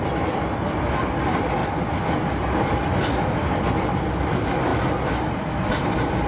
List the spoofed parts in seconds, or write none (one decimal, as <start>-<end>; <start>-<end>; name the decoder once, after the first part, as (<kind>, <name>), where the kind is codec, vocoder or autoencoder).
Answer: none